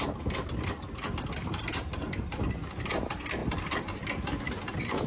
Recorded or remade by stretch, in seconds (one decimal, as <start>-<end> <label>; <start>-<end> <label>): 0.0-1.7 recorded; 1.7-2.4 remade; 2.4-5.1 recorded